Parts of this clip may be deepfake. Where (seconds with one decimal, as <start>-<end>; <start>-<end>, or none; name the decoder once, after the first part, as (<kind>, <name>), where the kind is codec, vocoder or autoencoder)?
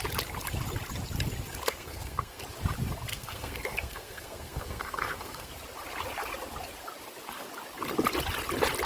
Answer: 1.7-2.4 (codec, SNAC); 3.1-5.5